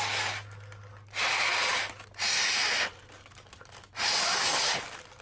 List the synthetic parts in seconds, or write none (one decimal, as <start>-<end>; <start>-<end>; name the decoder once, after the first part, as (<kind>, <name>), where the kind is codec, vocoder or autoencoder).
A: none